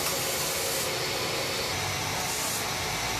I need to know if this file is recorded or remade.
recorded